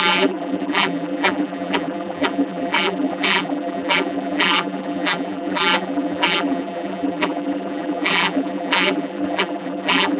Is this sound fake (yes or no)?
yes